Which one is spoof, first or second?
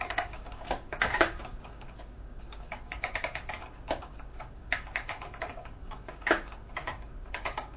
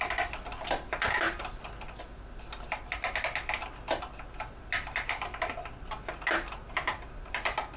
first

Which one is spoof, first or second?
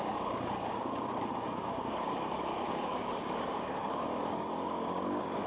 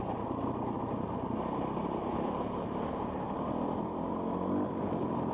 first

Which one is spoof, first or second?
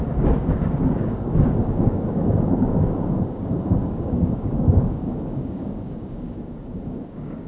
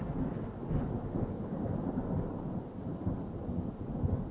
first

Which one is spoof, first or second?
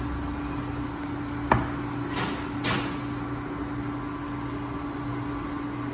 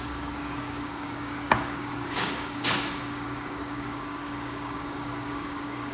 second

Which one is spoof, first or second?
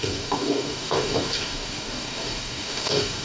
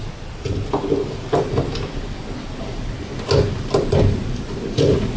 first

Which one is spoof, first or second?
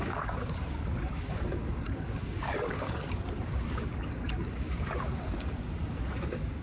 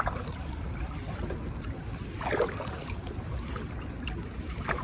first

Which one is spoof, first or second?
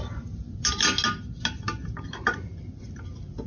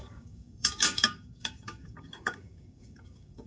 second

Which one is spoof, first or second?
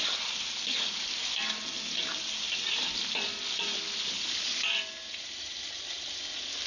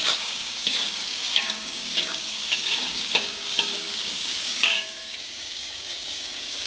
second